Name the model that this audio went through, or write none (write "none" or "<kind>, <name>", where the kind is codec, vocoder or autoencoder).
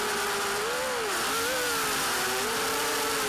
none